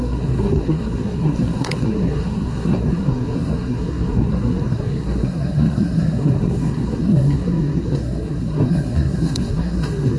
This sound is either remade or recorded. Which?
remade